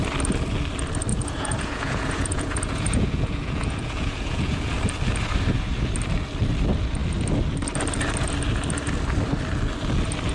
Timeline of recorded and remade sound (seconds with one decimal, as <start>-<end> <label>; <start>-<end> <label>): 0.0-1.1 recorded; 1.1-4.7 remade; 4.7-10.3 recorded